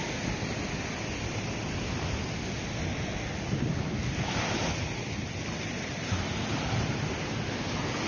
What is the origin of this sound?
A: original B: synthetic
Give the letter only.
A